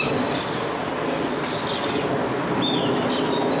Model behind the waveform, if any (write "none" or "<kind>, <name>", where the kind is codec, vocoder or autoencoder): none